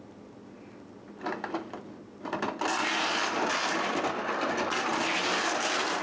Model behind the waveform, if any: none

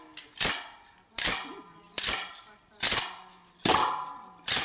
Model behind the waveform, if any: none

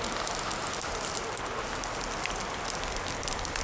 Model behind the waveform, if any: none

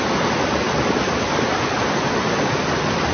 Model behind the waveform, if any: none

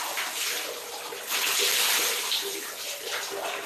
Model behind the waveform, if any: none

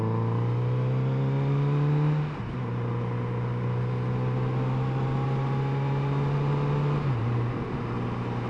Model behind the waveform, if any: none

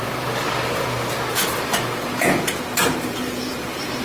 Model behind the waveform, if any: vocoder, BigVGAN v2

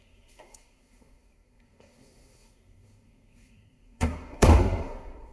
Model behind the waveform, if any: codec, SNAC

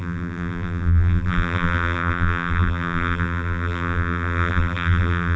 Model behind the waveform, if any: vocoder, BigVGAN v2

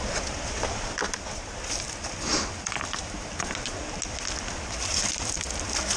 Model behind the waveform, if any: none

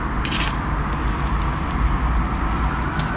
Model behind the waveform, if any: none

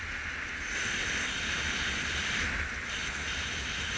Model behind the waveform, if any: none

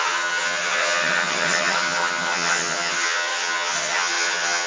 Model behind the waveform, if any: vocoder, HiFi-GAN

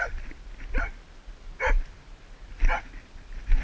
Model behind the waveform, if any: none